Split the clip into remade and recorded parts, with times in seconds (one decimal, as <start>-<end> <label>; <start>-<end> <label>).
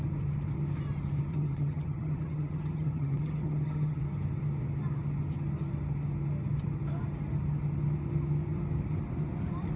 0.0-1.3 recorded; 1.3-4.0 remade; 4.0-9.8 recorded